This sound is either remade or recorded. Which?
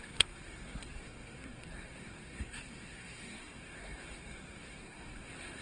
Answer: remade